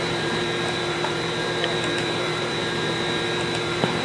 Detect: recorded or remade remade